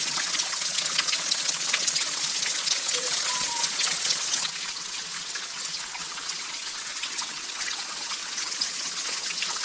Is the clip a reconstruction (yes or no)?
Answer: yes